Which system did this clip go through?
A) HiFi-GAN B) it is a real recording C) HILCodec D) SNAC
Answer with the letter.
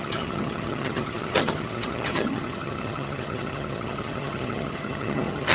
A